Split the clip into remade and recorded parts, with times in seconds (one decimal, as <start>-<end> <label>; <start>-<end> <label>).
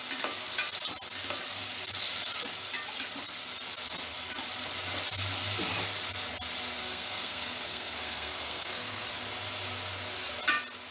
0.0-6.8 recorded; 6.8-9.1 remade; 9.1-10.9 recorded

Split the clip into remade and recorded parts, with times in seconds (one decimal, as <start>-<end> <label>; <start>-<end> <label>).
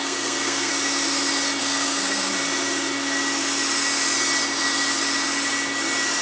0.0-0.7 remade; 0.7-1.6 recorded; 1.6-2.3 remade; 2.3-6.2 recorded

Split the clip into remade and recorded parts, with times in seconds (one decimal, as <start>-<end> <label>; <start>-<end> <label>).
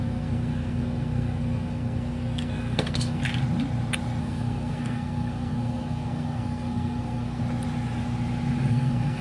0.0-3.2 remade; 3.2-4.2 recorded; 4.2-7.4 remade; 7.4-8.7 recorded; 8.7-9.2 remade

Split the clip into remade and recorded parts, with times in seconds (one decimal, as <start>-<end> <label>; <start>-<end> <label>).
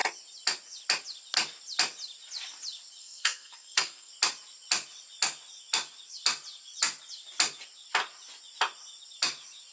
0.0-3.0 recorded; 3.0-4.1 remade; 4.1-9.7 recorded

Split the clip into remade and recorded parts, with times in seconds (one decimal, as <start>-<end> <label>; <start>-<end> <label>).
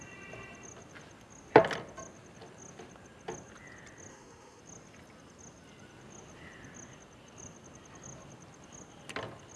0.0-4.1 recorded; 4.1-4.6 remade; 4.6-9.6 recorded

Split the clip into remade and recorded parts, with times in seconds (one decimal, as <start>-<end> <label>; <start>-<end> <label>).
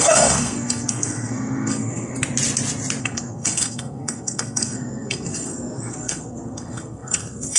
0.0-2.1 remade; 2.1-3.0 recorded; 3.0-7.6 remade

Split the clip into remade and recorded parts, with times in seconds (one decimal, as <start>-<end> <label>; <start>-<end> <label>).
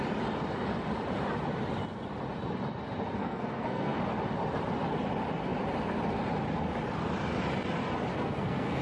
0.0-3.2 recorded; 3.2-4.0 remade; 4.0-8.1 recorded; 8.1-8.8 remade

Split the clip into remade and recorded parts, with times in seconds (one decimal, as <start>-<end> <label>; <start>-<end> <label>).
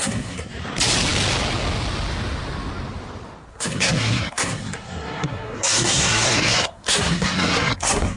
0.0-0.5 remade; 0.5-3.5 recorded; 3.5-8.2 remade